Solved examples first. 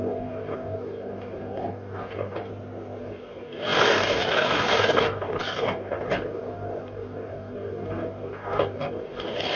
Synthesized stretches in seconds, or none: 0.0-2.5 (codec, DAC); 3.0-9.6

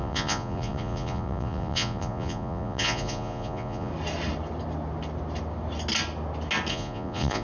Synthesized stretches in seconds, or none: 0.0-3.9 (vocoder, Vocos); 6.7-7.4

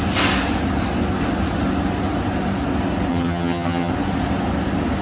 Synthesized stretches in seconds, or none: 3.1-3.9 (vocoder, HiFi-GAN)

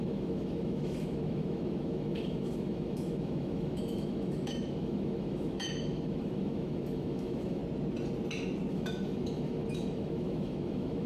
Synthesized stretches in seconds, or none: 0.0-7.6 (autoencoder, DAC-VAE); 8.7-11.1